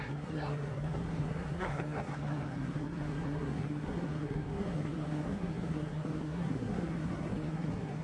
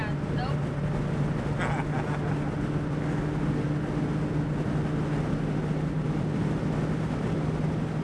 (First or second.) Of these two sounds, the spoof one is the first